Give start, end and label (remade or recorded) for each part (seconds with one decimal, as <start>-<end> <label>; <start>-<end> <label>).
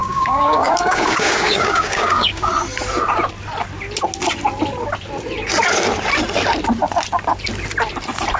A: 0.0-2.5 remade; 2.5-8.4 recorded